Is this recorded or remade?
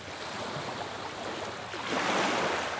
recorded